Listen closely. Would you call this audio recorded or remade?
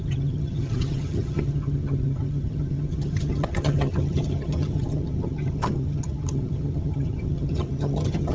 remade